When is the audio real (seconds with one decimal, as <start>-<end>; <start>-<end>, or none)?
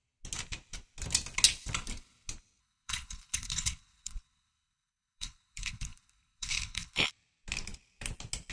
0.0-2.6; 7.1-8.5